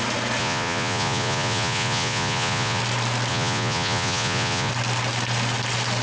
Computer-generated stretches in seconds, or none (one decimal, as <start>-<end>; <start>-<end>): 0.4-2.8; 3.3-4.7